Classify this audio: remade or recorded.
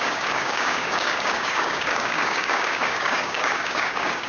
remade